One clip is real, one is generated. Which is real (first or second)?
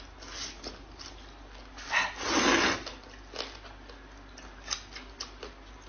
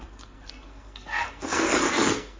first